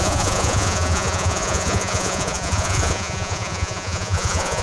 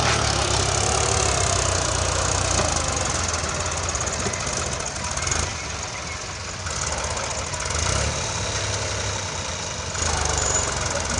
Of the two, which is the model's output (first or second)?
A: first